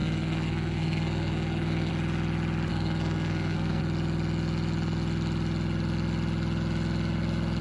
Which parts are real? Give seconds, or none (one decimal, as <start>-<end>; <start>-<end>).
1.9-2.7; 3.8-7.6